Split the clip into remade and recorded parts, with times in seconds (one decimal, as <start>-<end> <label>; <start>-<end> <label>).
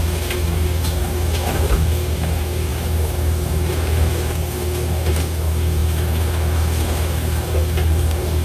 0.0-8.4 remade